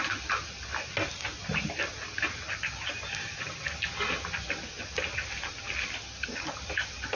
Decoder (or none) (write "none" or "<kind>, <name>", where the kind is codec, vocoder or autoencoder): none